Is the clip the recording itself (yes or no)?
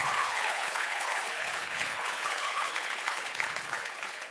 no